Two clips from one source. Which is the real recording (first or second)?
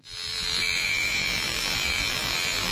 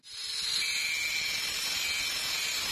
second